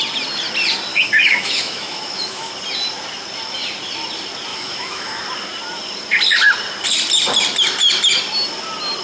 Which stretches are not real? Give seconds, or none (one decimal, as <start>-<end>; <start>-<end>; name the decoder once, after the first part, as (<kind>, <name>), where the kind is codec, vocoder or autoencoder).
0.9-2.5 (autoencoder, DAC-VAE); 4.5-5.2